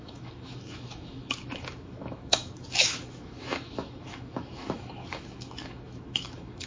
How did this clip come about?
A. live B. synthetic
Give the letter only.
B